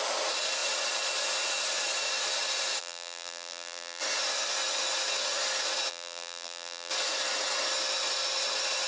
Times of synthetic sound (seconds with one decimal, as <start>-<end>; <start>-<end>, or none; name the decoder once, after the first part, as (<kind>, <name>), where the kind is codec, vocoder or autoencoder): 2.8-4.0 (vocoder, BigVGAN v2); 5.9-6.9